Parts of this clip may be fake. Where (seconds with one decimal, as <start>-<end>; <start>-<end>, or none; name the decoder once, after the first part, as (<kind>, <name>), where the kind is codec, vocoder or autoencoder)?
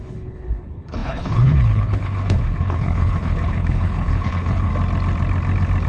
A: 0.0-4.7 (codec, HILCodec)